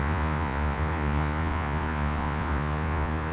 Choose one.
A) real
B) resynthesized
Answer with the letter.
B